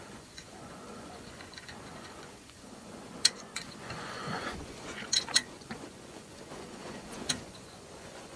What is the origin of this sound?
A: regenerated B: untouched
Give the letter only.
A